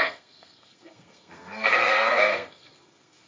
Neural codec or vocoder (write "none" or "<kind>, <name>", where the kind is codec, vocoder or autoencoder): codec, SNAC